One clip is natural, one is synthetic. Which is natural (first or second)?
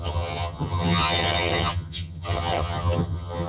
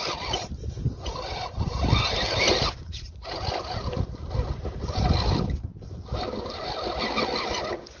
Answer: second